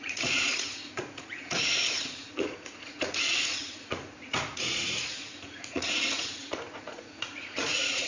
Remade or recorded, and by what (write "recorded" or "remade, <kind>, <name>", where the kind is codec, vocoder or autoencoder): remade, vocoder, Vocos